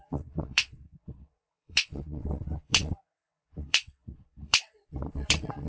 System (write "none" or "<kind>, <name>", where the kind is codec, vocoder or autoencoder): vocoder, WaveNeXt